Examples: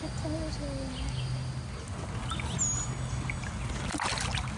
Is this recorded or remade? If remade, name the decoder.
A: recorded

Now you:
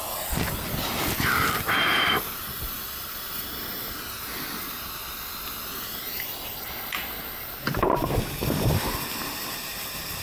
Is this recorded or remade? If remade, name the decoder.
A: recorded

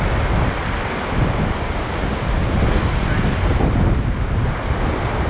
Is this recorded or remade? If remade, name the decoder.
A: recorded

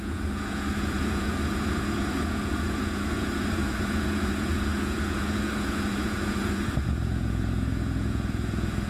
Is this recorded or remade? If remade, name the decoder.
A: remade, vocoder, Vocos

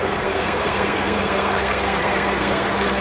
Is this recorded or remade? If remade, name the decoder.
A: remade, codec, SNAC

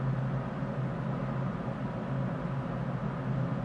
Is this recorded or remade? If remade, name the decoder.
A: recorded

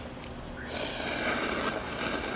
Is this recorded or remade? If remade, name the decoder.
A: recorded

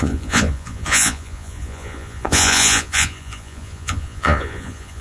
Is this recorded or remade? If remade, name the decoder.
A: remade, vocoder, Vocos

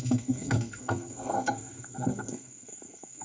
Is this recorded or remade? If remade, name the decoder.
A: remade, codec, SNAC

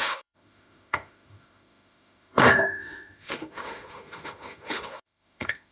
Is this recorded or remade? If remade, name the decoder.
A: remade, autoencoder, DAC-VAE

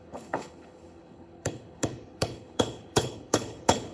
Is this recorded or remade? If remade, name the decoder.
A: remade, codec, HILCodec